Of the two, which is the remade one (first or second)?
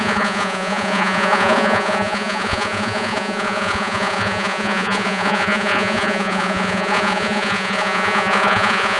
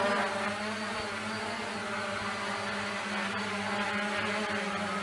first